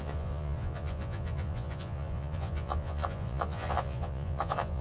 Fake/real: fake